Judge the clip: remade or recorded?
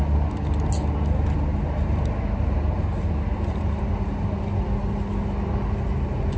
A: recorded